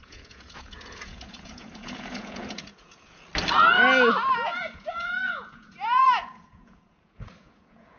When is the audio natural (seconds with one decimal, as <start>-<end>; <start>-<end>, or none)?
3.3-4.3